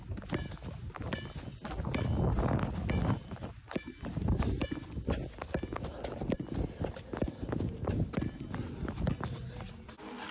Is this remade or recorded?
recorded